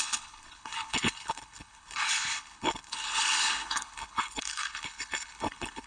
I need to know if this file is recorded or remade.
remade